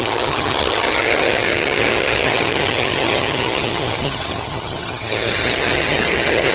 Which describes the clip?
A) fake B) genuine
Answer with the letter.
A